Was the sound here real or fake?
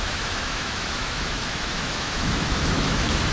fake